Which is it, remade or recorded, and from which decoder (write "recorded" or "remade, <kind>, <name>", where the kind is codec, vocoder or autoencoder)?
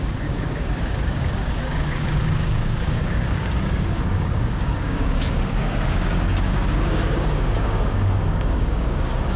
remade, codec, DAC